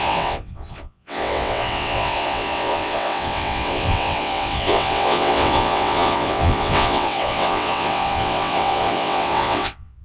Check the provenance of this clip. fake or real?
fake